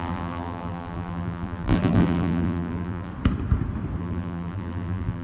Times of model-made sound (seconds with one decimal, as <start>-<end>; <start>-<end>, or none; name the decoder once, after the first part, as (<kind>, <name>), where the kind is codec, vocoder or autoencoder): 0.0-3.1 (vocoder, BigVGAN v2); 4.0-5.2